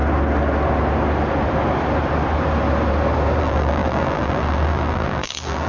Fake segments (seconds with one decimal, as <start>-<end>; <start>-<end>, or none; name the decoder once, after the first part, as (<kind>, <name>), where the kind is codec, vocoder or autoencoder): 3.4-5.7 (vocoder, BigVGAN v2)